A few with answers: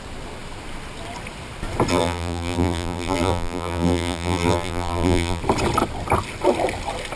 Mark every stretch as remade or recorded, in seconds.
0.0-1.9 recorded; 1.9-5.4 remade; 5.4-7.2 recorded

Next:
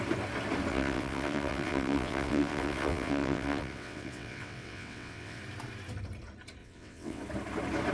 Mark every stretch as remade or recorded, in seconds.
0.0-0.7 recorded; 0.7-5.4 remade; 5.4-6.6 recorded; 6.6-7.2 remade; 7.2-7.9 recorded